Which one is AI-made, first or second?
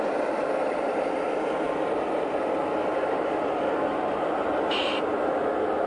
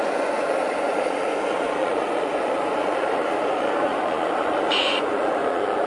second